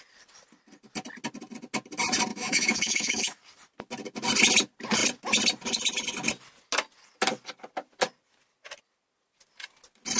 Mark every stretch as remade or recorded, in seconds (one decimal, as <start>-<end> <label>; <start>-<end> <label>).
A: 0.0-2.3 recorded; 2.3-3.4 remade; 3.4-10.2 recorded